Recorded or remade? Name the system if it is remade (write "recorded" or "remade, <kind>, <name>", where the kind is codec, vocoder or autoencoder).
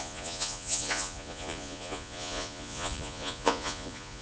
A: remade, vocoder, Vocos